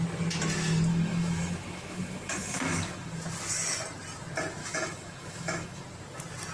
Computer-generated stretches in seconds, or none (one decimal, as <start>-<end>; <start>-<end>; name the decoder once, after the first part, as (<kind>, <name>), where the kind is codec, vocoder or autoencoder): 0.9-3.1 (autoencoder, DAC-VAE); 4.6-5.8